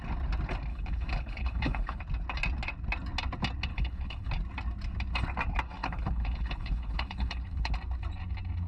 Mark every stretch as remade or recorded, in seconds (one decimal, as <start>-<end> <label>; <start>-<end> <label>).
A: 0.0-0.7 recorded; 0.7-2.0 remade; 2.0-3.7 recorded; 3.7-4.3 remade; 4.3-5.8 recorded; 5.8-7.7 remade; 7.7-8.7 recorded